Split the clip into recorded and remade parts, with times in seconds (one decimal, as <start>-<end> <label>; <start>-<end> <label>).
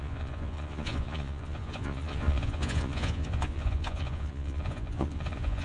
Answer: 0.0-5.6 remade